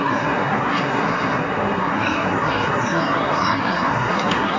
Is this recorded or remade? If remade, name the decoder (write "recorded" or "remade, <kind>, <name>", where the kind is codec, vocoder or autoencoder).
remade, codec, SNAC